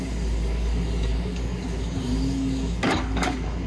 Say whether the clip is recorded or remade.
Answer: remade